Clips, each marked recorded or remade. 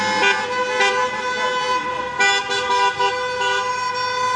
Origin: recorded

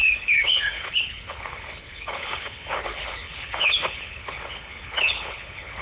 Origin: remade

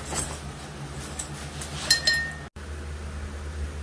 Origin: recorded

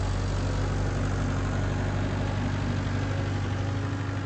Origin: recorded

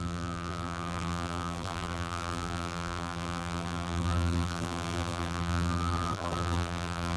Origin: remade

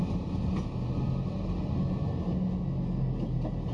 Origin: recorded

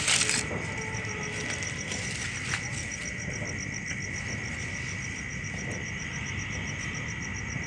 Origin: recorded